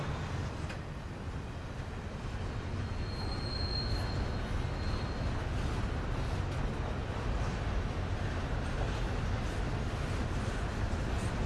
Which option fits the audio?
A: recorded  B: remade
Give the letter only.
A